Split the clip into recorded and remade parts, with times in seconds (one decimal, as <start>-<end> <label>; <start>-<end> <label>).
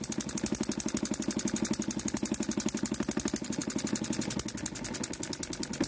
0.0-5.9 recorded